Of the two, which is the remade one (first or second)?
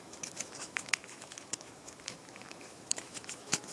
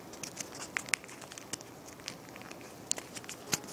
first